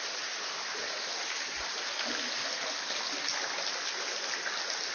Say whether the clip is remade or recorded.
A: recorded